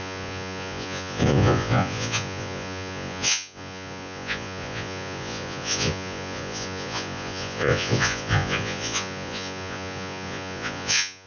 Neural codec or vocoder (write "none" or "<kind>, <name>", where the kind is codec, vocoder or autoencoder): vocoder, Vocos